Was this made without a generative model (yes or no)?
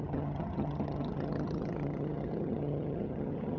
no